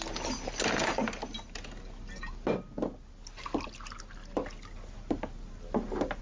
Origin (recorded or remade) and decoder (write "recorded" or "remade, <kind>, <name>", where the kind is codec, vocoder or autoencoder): recorded